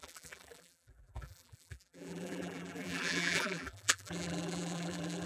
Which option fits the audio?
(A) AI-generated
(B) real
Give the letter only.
A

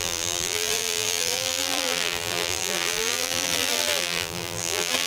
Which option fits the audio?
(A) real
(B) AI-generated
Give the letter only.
B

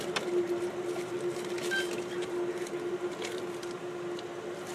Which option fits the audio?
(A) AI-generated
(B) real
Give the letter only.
A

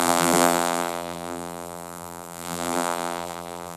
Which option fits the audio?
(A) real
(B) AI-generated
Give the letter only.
B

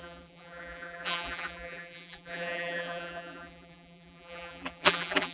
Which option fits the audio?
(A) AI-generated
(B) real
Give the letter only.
A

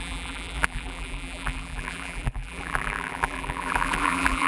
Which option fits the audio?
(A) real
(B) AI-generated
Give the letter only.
B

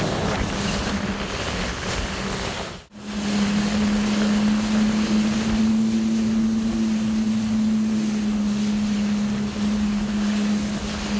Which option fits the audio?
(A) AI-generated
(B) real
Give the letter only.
B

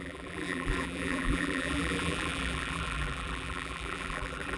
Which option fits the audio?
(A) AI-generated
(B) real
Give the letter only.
A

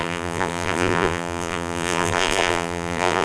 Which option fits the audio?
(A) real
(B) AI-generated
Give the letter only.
B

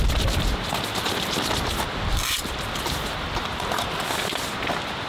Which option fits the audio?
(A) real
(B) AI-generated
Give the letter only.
B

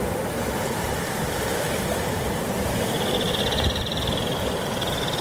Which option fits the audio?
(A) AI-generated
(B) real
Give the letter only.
B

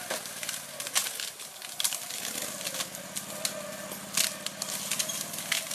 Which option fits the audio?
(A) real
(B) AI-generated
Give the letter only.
A